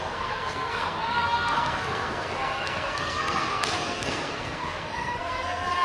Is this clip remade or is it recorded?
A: remade